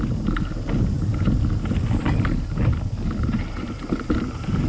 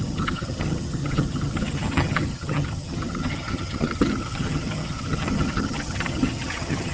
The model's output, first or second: second